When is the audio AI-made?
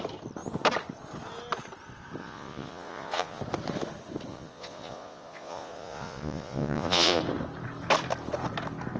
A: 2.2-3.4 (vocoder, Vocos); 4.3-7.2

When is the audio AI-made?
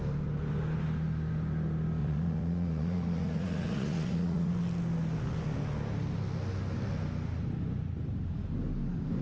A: 2.0-4.5 (vocoder, Vocos)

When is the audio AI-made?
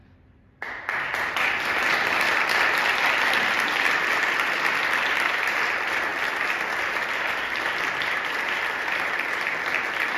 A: none